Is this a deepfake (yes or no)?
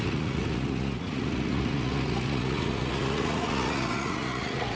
yes